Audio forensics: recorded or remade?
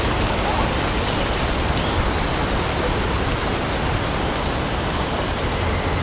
recorded